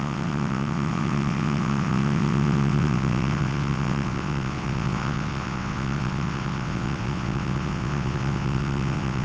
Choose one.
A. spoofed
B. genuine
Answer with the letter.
A